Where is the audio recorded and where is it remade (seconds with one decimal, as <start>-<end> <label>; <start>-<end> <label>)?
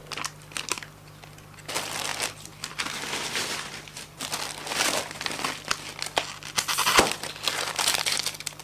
0.0-2.1 recorded; 2.1-4.2 remade; 4.2-8.6 recorded